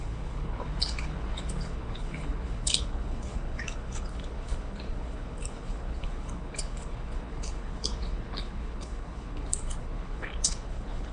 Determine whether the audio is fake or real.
fake